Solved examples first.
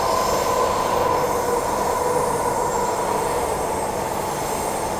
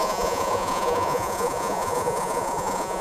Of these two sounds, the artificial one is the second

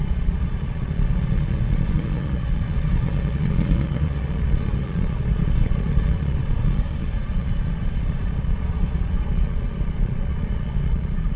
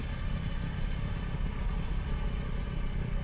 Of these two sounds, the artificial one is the first